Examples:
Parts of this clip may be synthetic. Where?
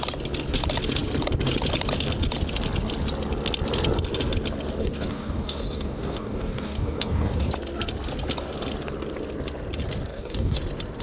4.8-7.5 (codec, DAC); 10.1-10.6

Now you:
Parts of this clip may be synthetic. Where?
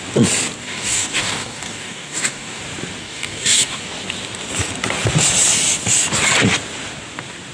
0.6-2.6 (codec, DAC); 3.0-3.8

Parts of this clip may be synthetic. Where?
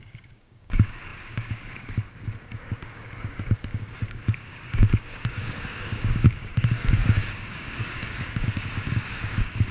0.0-9.7 (codec, DAC)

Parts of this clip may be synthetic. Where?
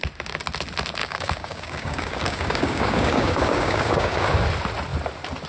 1.0-4.3 (codec, DAC)